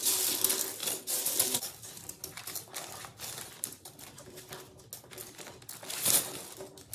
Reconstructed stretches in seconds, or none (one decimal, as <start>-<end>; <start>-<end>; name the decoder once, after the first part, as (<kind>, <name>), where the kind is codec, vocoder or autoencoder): 0.8-4.9 (vocoder, BigVGAN v2)